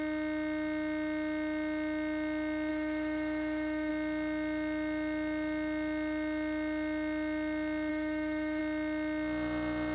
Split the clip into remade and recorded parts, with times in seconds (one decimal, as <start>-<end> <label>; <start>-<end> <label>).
0.0-2.7 recorded; 2.7-3.9 remade; 3.9-7.9 recorded; 7.9-8.6 remade; 8.6-9.9 recorded